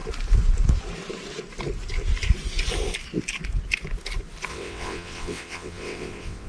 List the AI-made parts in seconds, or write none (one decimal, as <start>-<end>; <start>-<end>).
4.5-6.5